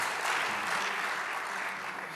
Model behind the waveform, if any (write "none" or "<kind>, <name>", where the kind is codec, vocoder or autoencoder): none